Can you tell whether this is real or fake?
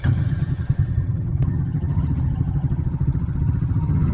fake